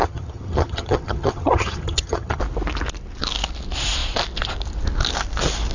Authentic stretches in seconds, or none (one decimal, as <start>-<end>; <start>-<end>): 2.4-5.7